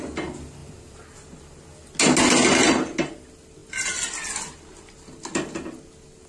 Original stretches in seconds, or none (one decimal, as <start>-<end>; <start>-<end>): 0.0-6.3